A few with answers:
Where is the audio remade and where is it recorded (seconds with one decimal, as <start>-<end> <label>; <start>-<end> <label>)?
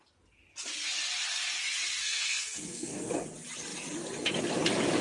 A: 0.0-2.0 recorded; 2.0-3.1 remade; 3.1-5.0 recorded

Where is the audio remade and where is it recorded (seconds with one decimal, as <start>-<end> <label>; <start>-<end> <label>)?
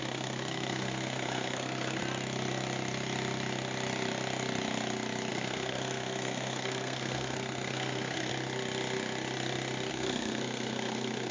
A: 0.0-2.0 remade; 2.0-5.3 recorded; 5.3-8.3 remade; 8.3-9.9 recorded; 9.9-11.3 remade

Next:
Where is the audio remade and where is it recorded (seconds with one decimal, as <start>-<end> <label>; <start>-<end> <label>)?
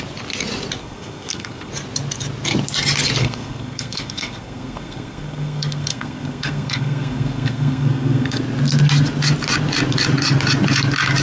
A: 0.0-0.8 recorded; 0.8-1.7 remade; 1.7-3.2 recorded; 3.2-8.4 remade; 8.4-11.2 recorded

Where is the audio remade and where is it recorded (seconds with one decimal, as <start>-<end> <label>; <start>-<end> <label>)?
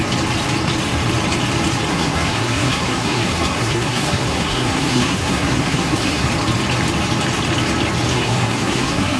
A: 0.0-1.9 recorded; 1.9-6.3 remade; 6.3-8.1 recorded; 8.1-9.2 remade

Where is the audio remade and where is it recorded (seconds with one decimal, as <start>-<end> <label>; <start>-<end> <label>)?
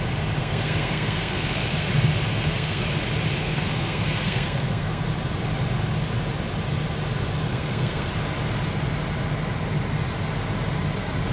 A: 0.0-0.4 recorded; 0.4-1.9 remade; 1.9-2.3 recorded; 2.3-2.8 remade; 2.8-3.4 recorded; 3.4-5.0 remade; 5.0-7.5 recorded; 7.5-8.1 remade; 8.1-11.3 recorded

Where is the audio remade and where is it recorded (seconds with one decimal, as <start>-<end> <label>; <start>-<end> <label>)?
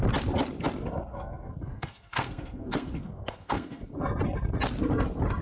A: 0.0-1.1 recorded; 1.1-3.8 remade; 3.8-5.4 recorded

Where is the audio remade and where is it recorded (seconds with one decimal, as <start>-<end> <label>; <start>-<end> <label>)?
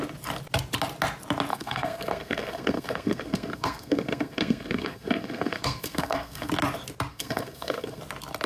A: 0.0-1.5 recorded; 1.5-6.5 remade; 6.5-7.1 recorded; 7.1-8.0 remade; 8.0-8.5 recorded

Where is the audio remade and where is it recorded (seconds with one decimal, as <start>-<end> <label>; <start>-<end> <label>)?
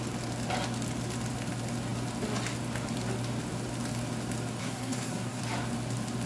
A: 0.0-4.6 recorded; 4.6-5.4 remade; 5.4-6.3 recorded